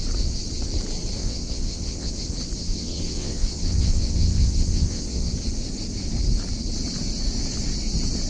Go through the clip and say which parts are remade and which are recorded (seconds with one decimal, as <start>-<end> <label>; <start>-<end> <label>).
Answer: 0.0-1.2 recorded; 1.2-2.1 remade; 2.1-2.6 recorded; 2.6-5.3 remade; 5.3-8.3 recorded